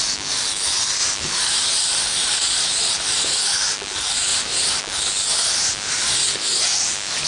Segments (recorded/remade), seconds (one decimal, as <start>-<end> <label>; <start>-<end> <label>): 0.0-1.0 recorded; 1.0-3.4 remade; 3.4-4.3 recorded; 4.3-4.8 remade; 4.8-5.3 recorded; 5.3-7.3 remade